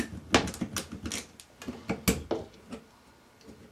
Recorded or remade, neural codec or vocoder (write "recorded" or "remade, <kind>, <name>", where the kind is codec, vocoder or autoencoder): recorded